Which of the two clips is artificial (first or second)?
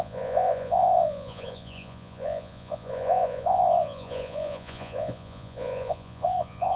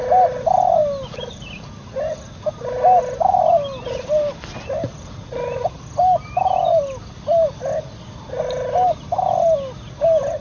first